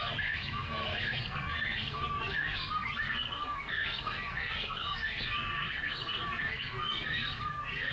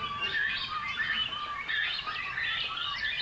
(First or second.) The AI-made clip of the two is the first